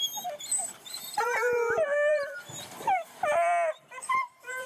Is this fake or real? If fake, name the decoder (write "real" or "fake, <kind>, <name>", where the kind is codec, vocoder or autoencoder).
fake, vocoder, BigVGAN v2